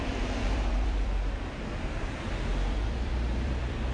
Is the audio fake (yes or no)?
yes